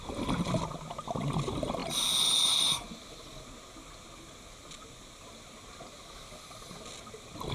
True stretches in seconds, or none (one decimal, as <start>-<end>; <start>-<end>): 0.0-7.5